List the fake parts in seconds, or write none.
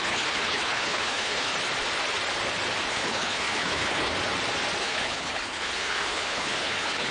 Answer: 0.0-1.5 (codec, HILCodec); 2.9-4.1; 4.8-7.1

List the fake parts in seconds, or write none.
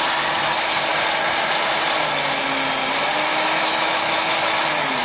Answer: 3.3-4.6 (autoencoder, DAC-VAE)